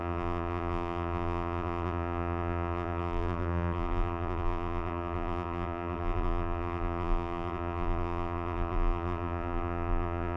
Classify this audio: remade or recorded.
remade